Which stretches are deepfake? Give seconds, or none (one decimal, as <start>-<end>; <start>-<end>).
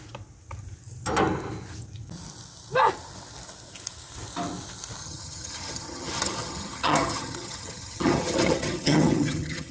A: 5.0-9.7